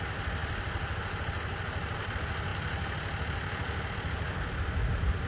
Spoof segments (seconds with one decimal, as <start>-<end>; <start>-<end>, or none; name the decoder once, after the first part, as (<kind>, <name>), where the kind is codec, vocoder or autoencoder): none